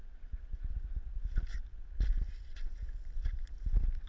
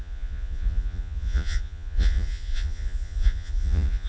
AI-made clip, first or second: second